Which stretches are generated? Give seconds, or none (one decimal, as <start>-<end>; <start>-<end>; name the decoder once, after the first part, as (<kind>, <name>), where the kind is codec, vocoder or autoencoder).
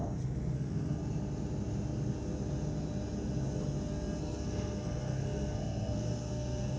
0.0-1.0 (codec, SNAC); 4.2-6.8